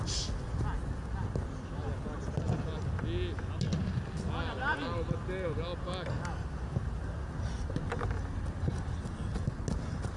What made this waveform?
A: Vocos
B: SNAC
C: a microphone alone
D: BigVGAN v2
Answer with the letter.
C